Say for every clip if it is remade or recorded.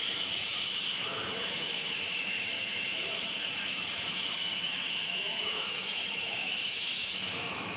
remade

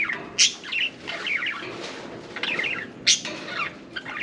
recorded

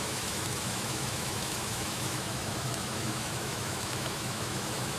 remade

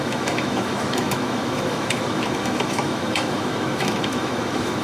remade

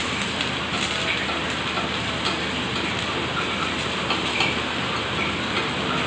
recorded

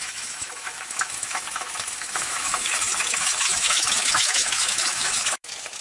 remade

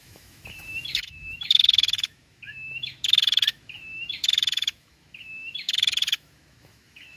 remade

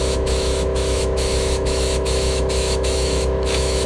remade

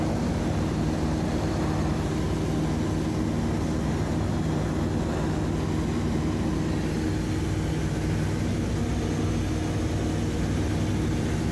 recorded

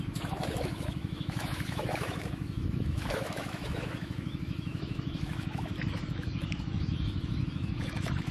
remade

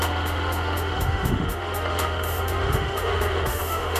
remade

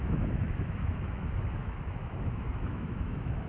remade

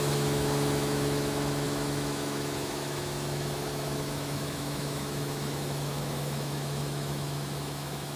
remade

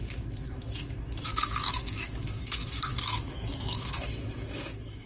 remade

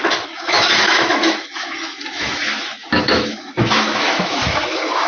remade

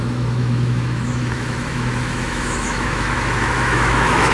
remade